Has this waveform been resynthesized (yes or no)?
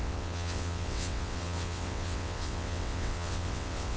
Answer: yes